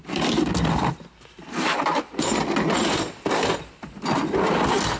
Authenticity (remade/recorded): recorded